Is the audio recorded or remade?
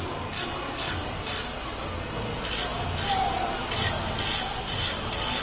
recorded